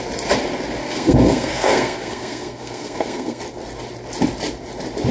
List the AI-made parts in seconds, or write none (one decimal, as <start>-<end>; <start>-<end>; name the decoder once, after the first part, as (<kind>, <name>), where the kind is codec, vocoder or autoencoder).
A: 0.8-3.4 (codec, SNAC)